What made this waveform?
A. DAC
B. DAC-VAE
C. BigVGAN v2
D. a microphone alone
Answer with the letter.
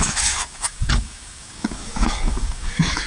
A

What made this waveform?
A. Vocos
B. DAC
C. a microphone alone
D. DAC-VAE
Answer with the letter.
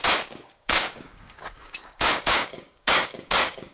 B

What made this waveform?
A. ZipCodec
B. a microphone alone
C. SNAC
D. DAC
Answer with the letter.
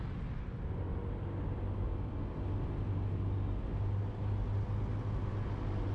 B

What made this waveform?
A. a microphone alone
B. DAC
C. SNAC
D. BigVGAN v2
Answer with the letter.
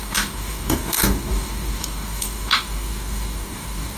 B